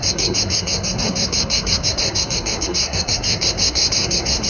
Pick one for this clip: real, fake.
fake